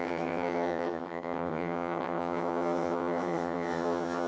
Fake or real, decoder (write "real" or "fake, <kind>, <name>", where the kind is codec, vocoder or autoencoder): fake, vocoder, HiFi-GAN